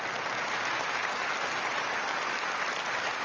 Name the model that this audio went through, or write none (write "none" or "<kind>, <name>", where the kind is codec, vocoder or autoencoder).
none